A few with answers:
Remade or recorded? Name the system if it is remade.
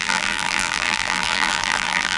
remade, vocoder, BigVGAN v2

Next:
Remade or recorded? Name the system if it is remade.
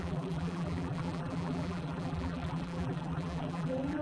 remade, vocoder, BigVGAN v2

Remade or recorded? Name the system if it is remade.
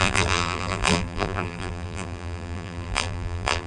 remade, vocoder, BigVGAN v2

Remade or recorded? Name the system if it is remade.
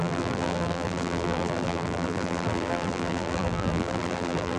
remade, vocoder, BigVGAN v2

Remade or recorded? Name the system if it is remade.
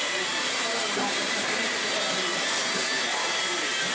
remade, vocoder, BigVGAN v2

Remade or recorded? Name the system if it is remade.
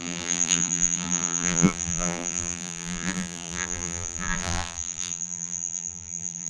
remade, vocoder, BigVGAN v2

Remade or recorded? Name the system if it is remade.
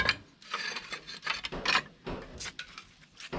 recorded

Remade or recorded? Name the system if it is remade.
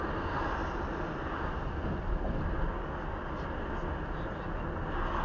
recorded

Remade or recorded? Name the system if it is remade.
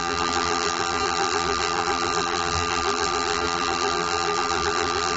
remade, vocoder, BigVGAN v2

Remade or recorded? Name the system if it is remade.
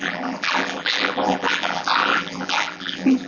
remade, vocoder, BigVGAN v2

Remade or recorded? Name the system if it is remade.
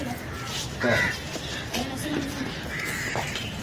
recorded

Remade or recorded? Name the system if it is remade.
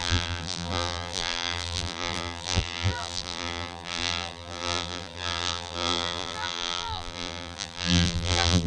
remade, vocoder, BigVGAN v2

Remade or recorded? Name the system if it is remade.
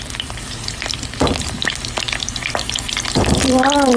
remade, vocoder, BigVGAN v2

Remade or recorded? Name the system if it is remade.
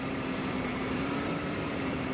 remade, vocoder, BigVGAN v2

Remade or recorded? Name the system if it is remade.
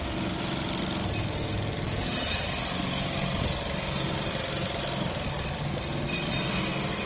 recorded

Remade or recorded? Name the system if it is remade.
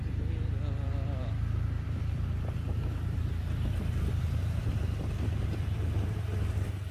remade, vocoder, BigVGAN v2